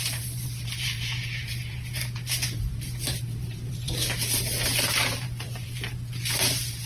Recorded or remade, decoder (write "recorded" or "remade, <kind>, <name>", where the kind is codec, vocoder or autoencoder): remade, vocoder, BigVGAN v2